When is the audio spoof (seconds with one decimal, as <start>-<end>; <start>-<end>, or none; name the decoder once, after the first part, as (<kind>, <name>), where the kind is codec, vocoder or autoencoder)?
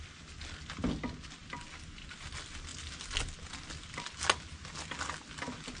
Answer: none